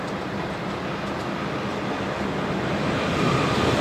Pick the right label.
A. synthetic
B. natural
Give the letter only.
B